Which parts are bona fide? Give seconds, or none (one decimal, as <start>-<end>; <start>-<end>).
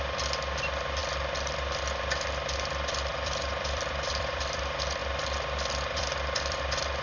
0.0-3.1; 4.6-5.0; 6.6-7.0